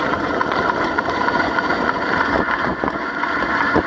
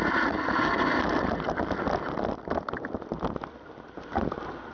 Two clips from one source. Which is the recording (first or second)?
second